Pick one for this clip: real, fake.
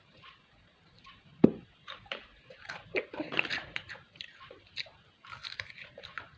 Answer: fake